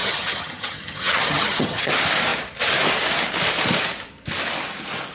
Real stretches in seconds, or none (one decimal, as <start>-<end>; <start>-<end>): 1.9-5.1